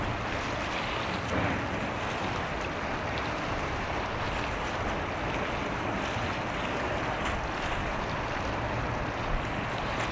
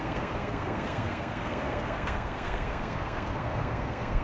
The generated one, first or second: second